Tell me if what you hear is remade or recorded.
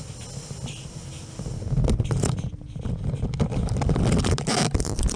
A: recorded